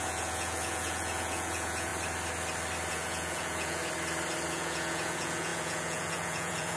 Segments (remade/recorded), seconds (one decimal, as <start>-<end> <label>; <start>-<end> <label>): 0.0-1.9 remade; 1.9-2.9 recorded; 2.9-3.8 remade; 3.8-4.5 recorded; 4.5-6.8 remade